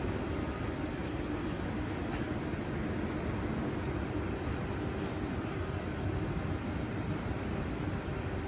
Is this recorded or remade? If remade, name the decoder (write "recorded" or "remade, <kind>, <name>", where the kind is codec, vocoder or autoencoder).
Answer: recorded